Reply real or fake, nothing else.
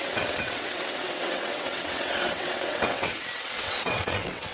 fake